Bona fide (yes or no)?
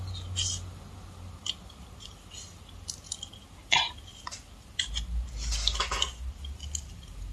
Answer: yes